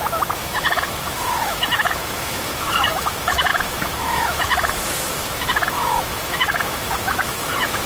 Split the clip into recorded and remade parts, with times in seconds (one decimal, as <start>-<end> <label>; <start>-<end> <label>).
0.0-7.9 remade